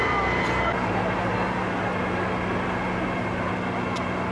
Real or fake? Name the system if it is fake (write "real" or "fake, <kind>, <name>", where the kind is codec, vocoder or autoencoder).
real